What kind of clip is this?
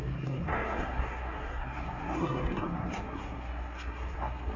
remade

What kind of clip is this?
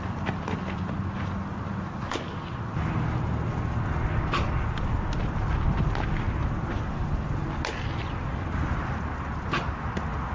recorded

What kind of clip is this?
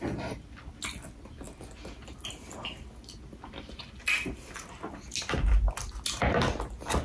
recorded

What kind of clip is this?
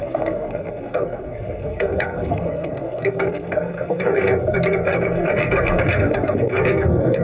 remade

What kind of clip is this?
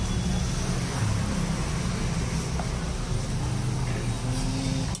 recorded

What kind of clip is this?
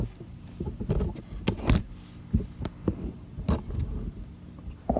recorded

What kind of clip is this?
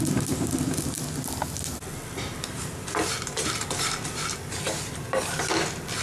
recorded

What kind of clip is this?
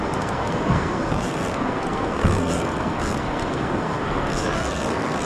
remade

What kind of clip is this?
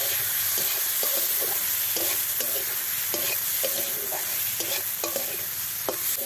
recorded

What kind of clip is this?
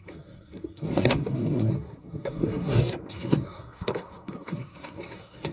remade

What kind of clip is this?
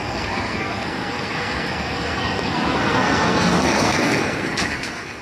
remade